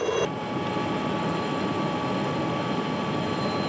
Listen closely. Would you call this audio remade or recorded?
recorded